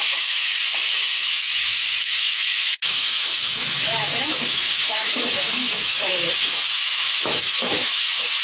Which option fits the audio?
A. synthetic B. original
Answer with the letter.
A